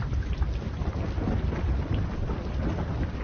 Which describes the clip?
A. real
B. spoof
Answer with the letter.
A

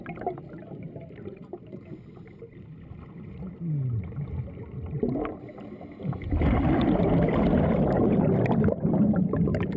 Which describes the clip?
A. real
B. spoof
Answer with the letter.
A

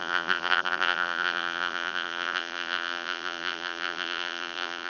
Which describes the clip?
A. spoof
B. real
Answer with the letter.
A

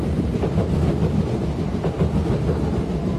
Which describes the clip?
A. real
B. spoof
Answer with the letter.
A